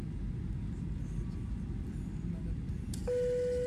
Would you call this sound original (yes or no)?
yes